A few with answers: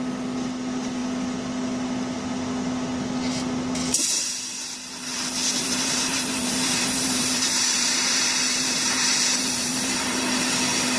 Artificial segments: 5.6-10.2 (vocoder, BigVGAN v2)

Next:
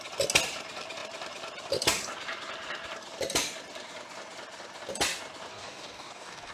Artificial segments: 5.5-6.5 (codec, DAC)

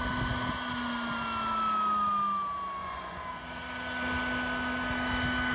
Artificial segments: 2.8-3.4 (vocoder, Vocos)

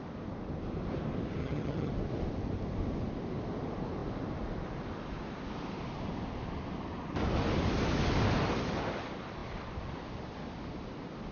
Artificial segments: 1.4-1.9 (vocoder, HiFi-GAN)

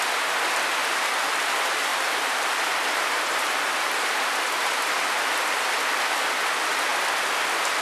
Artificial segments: 0.8-1.3 (vocoder, BigVGAN v2); 1.9-5.7

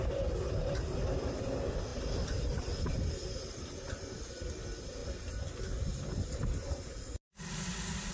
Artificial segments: none